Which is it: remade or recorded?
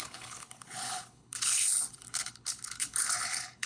remade